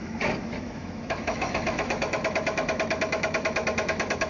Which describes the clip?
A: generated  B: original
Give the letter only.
A